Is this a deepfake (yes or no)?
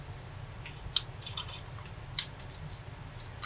no